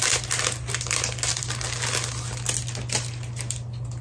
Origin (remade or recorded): recorded